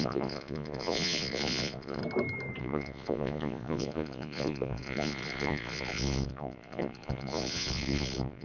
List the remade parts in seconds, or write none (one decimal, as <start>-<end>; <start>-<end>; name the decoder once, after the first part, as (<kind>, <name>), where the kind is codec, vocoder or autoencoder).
0.0-2.0 (vocoder, Vocos); 2.6-8.4